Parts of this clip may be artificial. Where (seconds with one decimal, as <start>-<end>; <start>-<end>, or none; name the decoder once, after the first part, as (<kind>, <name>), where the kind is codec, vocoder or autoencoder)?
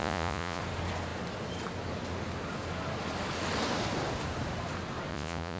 0.0-0.6 (vocoder, Vocos); 5.1-5.6